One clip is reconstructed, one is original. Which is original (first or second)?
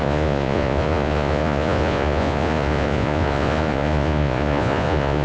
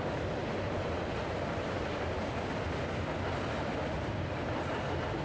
second